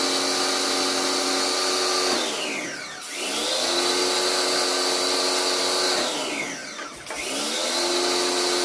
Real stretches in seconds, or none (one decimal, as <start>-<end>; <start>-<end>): 0.0-8.6